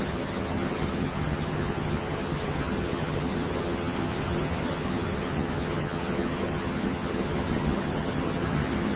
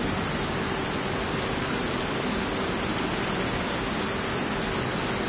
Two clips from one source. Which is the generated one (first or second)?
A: first